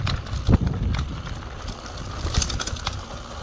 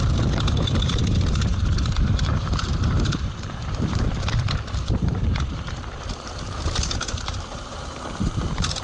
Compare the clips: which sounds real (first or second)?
first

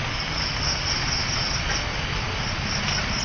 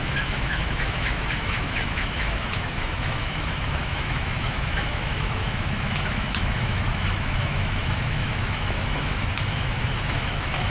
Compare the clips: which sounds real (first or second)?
first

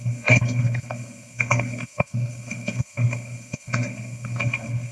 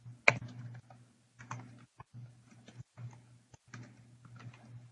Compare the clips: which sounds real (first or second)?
second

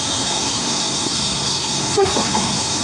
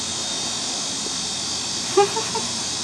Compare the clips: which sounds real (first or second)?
second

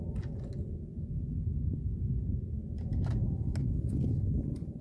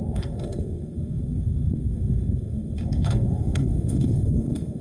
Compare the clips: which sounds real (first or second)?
first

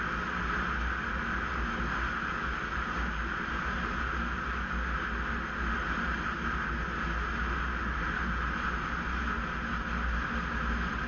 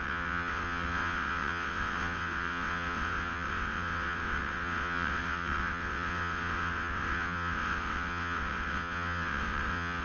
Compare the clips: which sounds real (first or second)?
first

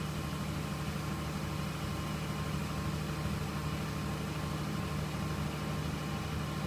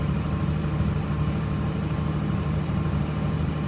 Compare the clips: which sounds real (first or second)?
first